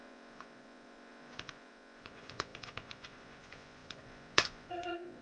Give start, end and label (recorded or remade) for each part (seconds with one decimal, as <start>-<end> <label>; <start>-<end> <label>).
0.0-5.2 remade

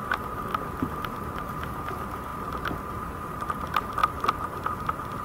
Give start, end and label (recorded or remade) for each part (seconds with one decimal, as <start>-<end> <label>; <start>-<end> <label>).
0.0-0.5 remade; 0.5-1.1 recorded; 1.1-5.2 remade

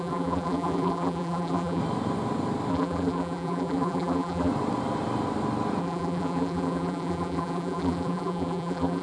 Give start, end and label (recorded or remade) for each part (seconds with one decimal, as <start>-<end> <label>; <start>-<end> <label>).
0.0-1.8 remade; 1.8-2.7 recorded; 2.7-4.5 remade; 4.5-5.8 recorded; 5.8-9.0 remade

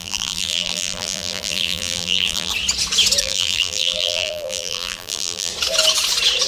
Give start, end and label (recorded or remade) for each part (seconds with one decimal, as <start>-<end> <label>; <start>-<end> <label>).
0.0-2.5 remade; 2.5-3.2 recorded; 3.2-5.5 remade; 5.5-6.5 recorded

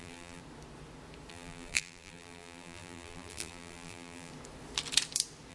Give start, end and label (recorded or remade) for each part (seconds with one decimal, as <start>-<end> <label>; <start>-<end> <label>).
0.0-0.4 remade; 0.4-1.3 recorded; 1.3-4.3 remade; 4.3-5.5 recorded

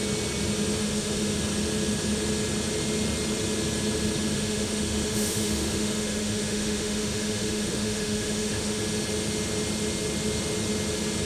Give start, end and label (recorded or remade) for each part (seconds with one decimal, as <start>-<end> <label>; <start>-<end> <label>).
0.0-0.8 recorded; 0.8-1.4 remade; 1.4-4.3 recorded; 4.3-8.8 remade; 8.8-11.3 recorded